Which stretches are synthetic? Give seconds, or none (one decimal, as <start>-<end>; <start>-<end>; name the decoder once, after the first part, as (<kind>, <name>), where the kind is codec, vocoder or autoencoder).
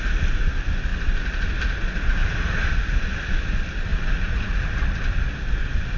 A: 2.2-2.7 (vocoder, Vocos); 3.9-4.5